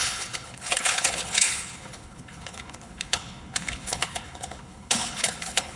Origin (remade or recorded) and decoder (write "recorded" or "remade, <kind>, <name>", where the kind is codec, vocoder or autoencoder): remade, codec, HILCodec